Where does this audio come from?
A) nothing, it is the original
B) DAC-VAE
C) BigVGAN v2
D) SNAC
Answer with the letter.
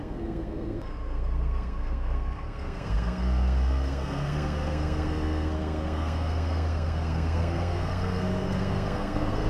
D